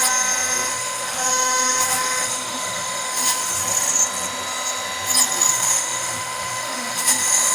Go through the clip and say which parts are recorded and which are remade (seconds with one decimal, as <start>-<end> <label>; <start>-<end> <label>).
0.0-0.7 recorded; 0.7-3.6 remade; 3.6-5.5 recorded; 5.5-7.5 remade